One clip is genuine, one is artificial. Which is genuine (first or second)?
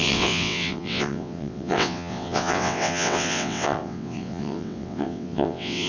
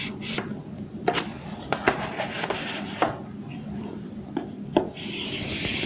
second